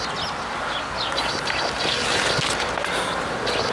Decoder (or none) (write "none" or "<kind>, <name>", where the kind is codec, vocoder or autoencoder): none